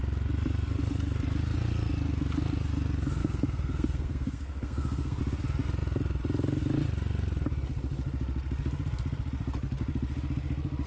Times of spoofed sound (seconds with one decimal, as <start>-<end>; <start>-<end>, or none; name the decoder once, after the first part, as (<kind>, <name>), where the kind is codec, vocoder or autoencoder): 3.2-5.2 (codec, SNAC)